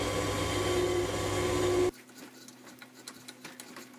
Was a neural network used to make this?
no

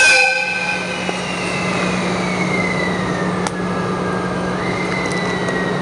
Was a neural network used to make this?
no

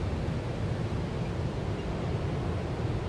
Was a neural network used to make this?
no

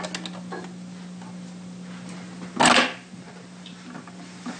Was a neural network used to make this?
no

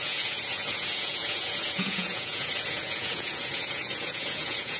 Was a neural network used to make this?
yes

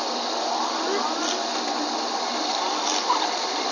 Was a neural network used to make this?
no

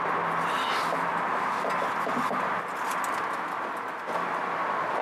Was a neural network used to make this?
no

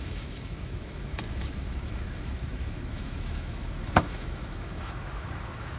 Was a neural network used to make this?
yes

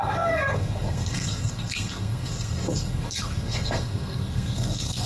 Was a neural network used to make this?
yes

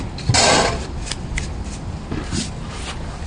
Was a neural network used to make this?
no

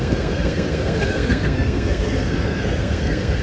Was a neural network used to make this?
yes